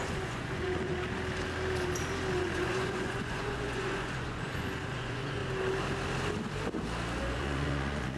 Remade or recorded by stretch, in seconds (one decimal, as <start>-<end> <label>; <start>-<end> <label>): 0.0-0.9 remade; 0.9-2.4 recorded; 2.4-5.4 remade; 5.4-7.2 recorded; 7.2-8.2 remade